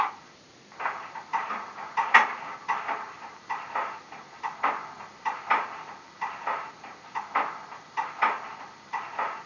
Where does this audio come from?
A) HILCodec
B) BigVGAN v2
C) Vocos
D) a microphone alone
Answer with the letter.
D